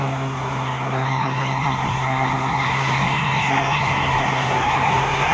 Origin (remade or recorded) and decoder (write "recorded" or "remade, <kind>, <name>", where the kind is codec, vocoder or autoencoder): remade, codec, SNAC